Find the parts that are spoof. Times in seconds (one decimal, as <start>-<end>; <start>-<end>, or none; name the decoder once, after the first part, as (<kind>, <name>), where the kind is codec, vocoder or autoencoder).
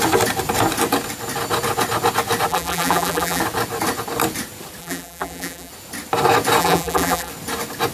2.5-3.4 (vocoder, BigVGAN v2); 4.8-5.7; 6.6-7.3